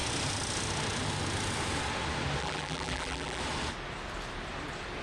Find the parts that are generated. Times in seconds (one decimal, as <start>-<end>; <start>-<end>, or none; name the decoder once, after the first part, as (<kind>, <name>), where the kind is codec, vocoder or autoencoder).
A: 2.4-3.4 (vocoder, BigVGAN v2)